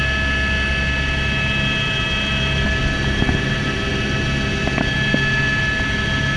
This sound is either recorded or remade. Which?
recorded